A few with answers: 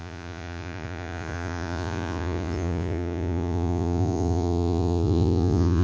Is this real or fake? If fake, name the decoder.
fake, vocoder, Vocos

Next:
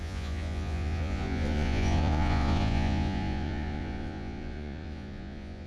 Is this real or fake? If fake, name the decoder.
fake, vocoder, Vocos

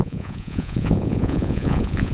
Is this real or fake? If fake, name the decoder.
fake, vocoder, Vocos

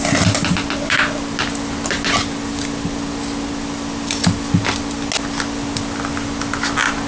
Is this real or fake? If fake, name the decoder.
real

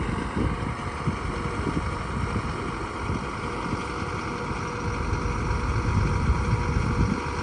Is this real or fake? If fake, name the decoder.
real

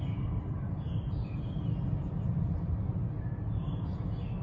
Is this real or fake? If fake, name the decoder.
real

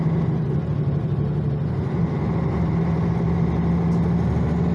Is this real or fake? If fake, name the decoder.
real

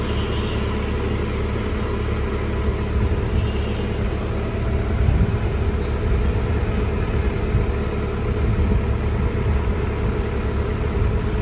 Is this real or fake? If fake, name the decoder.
real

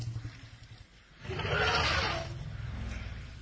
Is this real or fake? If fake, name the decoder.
real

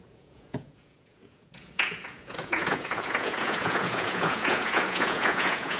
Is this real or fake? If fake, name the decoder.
fake, vocoder, Vocos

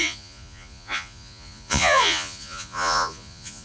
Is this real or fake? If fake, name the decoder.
fake, vocoder, Vocos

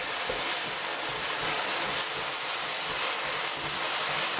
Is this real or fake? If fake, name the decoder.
real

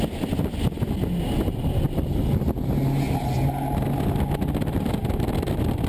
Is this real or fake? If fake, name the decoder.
real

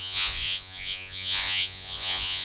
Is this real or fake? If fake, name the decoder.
fake, vocoder, Vocos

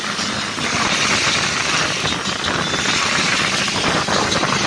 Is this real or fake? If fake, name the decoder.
real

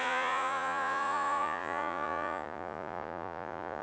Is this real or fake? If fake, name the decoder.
fake, vocoder, Vocos